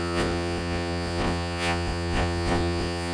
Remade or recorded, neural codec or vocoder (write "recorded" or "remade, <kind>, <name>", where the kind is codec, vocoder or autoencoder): remade, vocoder, Vocos